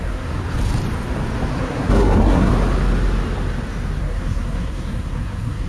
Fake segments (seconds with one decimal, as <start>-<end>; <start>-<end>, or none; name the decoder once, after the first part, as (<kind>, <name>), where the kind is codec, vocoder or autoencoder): 0.0-0.4 (codec, SNAC); 1.5-2.5; 4.0-5.7